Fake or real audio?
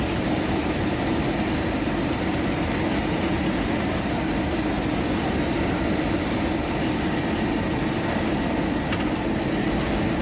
real